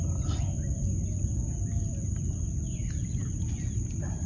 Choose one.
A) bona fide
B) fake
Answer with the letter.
A